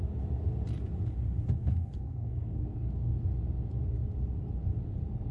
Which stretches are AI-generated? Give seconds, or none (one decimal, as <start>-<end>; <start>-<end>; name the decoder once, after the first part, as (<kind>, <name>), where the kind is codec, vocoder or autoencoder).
1.6-3.2 (codec, SNAC)